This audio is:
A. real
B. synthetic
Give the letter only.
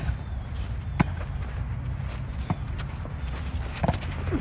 A